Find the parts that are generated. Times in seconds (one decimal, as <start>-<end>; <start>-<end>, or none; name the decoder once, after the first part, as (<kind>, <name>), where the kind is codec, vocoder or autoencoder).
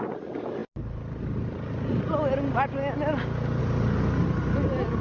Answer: none